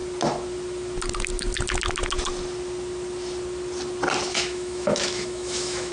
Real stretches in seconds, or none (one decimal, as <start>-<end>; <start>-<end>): 0.0-4.3